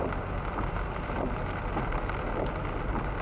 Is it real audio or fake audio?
real